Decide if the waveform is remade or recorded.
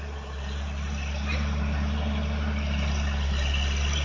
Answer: recorded